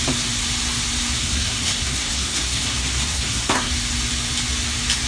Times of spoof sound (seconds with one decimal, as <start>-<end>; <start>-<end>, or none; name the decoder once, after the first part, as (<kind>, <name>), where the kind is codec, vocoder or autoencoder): 1.2-3.7 (codec, SNAC)